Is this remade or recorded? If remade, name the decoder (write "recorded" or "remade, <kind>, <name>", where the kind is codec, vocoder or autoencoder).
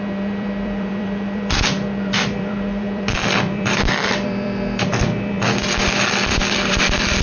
remade, vocoder, BigVGAN v2